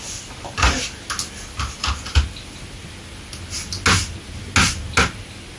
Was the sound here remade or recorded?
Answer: recorded